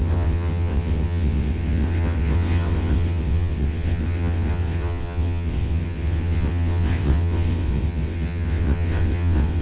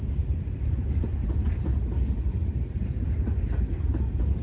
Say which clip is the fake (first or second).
first